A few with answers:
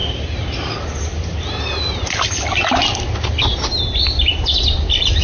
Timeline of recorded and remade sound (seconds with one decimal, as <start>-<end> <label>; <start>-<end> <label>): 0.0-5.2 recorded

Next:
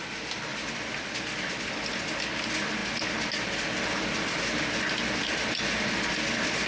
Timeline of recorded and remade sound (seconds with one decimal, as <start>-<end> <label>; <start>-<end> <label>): 0.0-6.7 recorded

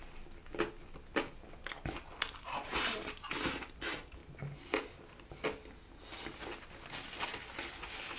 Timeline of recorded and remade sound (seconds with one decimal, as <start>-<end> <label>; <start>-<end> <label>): 0.0-8.2 recorded

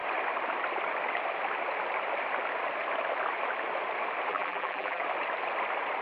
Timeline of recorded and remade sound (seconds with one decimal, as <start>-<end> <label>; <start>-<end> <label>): 0.0-4.3 recorded; 4.3-5.0 remade; 5.0-6.0 recorded